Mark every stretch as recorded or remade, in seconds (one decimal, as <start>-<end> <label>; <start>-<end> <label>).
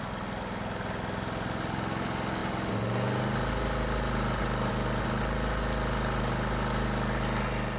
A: 0.0-7.8 recorded